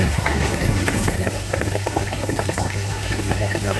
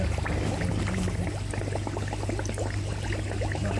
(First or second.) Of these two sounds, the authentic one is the second